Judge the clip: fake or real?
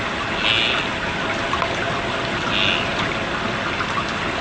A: real